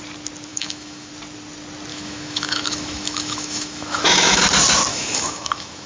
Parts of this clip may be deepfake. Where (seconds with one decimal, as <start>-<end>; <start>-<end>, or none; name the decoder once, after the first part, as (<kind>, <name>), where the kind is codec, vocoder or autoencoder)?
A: 0.5-1.1 (autoencoder, DAC-VAE); 1.9-4.4; 4.9-5.9